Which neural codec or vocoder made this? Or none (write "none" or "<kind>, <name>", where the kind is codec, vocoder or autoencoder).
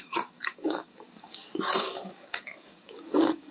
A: codec, DAC